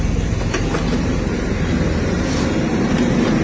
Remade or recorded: recorded